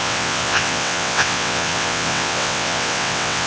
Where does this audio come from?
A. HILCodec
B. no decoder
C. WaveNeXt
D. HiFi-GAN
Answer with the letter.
C